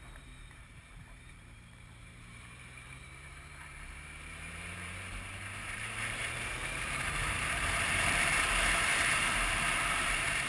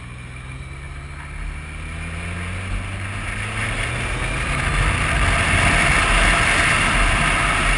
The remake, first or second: first